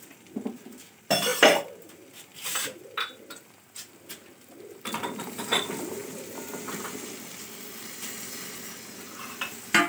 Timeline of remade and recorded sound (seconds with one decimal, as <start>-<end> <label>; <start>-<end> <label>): 0.0-9.9 recorded